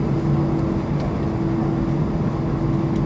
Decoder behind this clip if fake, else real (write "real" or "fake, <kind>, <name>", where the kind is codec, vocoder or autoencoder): real